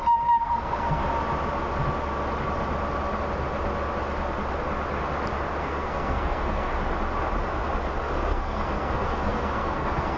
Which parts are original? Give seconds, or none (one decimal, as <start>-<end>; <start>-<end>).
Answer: 1.0-5.6; 6.7-8.0